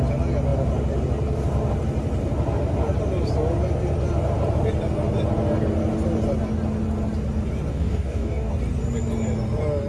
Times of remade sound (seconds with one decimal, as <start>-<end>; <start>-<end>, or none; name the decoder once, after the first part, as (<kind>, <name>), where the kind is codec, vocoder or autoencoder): 7.7-8.5 (codec, DAC)